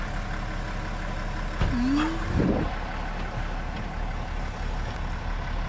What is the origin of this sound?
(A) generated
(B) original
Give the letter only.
B